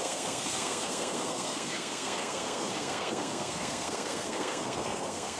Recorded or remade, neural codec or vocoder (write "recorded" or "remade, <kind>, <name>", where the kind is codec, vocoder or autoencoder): remade, codec, SNAC